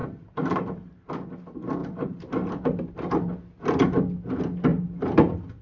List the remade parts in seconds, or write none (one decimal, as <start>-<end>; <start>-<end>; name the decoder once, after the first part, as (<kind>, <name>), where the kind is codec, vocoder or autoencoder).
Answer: 0.0-1.1 (vocoder, BigVGAN v2); 1.8-3.4; 4.7-5.6